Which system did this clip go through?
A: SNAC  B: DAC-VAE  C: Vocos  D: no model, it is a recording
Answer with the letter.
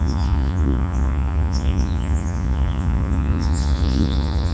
C